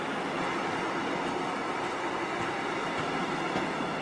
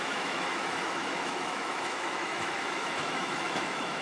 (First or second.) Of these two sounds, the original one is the first